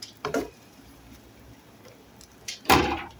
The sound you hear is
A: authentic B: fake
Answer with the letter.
B